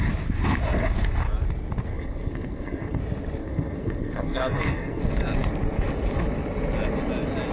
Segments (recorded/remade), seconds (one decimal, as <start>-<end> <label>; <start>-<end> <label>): 0.0-1.9 recorded; 1.9-3.0 remade; 3.0-3.4 recorded; 3.4-5.0 remade; 5.0-7.5 recorded